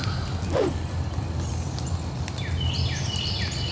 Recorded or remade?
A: recorded